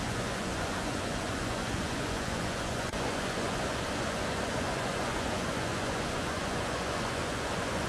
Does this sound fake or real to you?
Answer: fake